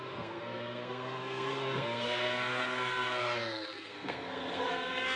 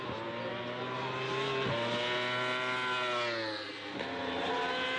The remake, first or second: first